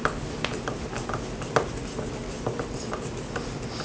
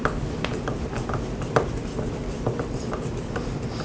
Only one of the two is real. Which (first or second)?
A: first